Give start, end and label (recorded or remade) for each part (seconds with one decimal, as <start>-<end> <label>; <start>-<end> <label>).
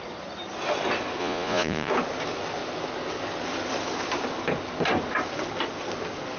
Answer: 0.0-1.2 recorded; 1.2-1.9 remade; 1.9-6.4 recorded